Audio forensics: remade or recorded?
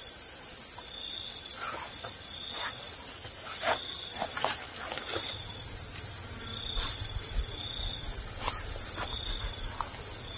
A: recorded